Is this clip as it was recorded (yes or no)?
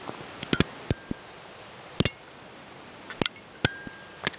yes